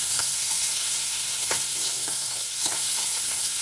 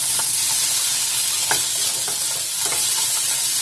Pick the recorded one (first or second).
second